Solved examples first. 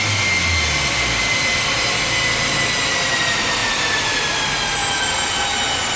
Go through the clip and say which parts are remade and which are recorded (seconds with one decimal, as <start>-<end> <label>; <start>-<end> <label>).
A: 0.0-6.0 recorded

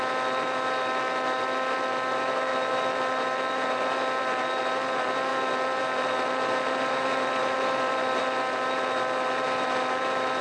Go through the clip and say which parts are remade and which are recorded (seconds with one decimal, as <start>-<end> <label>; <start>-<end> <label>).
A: 0.0-7.4 recorded; 7.4-8.2 remade; 8.2-10.4 recorded

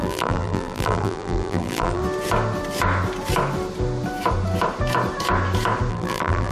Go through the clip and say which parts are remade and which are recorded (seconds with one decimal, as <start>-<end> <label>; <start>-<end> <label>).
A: 0.0-2.0 remade; 2.0-5.9 recorded; 5.9-6.5 remade

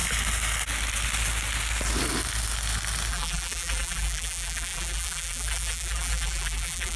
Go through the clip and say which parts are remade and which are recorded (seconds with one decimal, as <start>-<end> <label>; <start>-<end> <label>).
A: 0.0-3.1 recorded; 3.1-7.0 remade

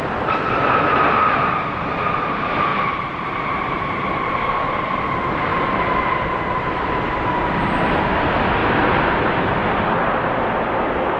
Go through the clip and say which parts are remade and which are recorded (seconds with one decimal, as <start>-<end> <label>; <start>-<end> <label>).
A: 0.0-2.7 recorded; 2.7-4.4 remade; 4.4-5.5 recorded; 5.5-7.1 remade; 7.1-11.2 recorded